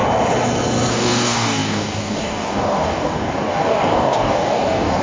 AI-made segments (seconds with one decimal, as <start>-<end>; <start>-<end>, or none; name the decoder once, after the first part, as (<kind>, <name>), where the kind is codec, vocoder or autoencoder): 0.9-5.0 (codec, DAC)